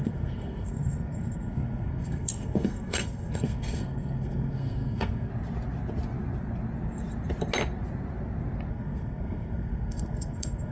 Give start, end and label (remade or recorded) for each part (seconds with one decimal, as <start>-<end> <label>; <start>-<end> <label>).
0.0-5.3 remade; 5.3-8.7 recorded; 8.7-10.7 remade